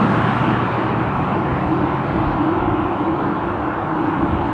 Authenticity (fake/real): fake